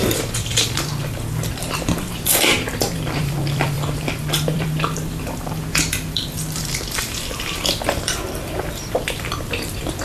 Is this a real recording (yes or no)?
no